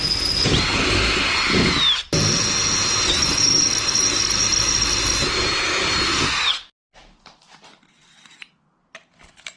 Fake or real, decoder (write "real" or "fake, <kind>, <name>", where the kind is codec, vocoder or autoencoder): real